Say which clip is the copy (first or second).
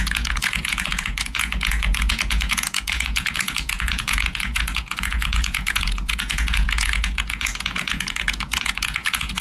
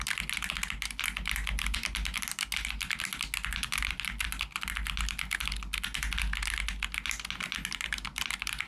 first